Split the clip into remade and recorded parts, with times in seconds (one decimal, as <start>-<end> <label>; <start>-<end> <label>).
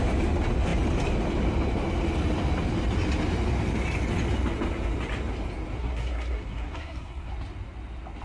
0.0-5.8 recorded; 5.8-7.3 remade; 7.3-8.2 recorded